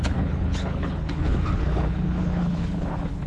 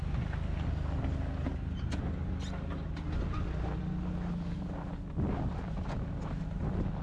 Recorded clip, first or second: second